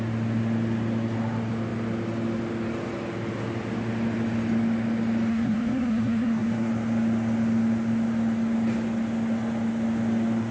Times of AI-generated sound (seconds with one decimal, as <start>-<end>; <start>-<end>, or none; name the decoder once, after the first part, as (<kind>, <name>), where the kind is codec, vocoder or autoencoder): 5.3-6.7 (codec, SNAC)